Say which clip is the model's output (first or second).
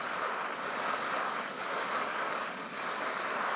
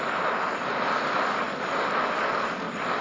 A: first